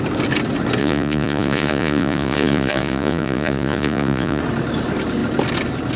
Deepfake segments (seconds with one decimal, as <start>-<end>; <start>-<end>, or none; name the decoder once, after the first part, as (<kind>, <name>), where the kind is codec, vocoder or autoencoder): 0.8-4.4 (vocoder, Vocos)